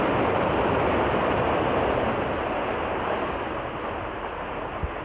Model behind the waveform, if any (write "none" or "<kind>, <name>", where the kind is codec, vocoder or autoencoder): none